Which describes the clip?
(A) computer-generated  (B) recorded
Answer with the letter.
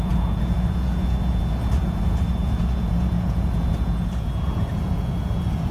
A